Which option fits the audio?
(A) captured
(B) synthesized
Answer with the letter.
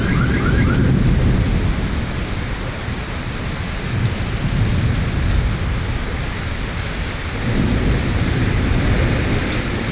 A